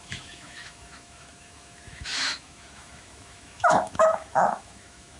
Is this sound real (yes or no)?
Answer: no